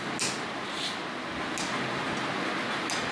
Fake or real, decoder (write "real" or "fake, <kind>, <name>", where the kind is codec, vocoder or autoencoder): real